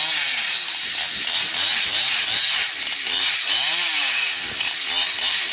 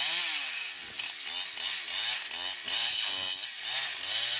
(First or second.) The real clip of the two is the second